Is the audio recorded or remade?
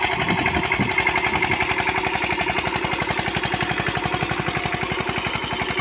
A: recorded